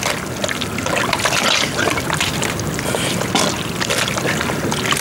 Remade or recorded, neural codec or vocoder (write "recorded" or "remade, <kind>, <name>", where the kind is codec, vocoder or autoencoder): recorded